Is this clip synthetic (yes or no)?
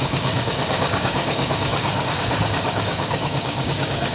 yes